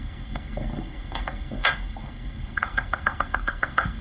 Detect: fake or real fake